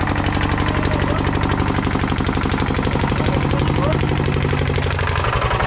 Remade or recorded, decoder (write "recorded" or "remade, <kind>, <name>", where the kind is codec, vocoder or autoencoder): recorded